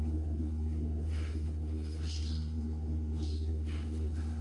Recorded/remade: remade